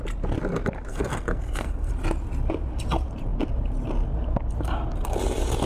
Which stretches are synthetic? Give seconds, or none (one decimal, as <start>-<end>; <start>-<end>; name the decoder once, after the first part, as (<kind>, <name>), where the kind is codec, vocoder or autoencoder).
0.9-1.9 (codec, SNAC)